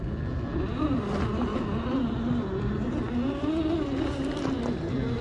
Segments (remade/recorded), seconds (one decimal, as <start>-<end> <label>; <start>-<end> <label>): 0.0-5.2 recorded